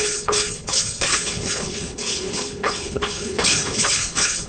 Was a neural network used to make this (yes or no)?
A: yes